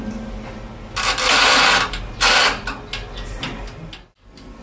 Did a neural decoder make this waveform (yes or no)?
no